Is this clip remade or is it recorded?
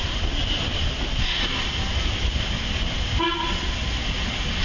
recorded